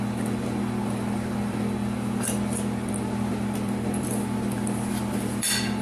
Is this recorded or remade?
recorded